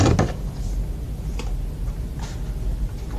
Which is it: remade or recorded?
recorded